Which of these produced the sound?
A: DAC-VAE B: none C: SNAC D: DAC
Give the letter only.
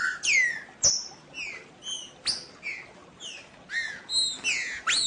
B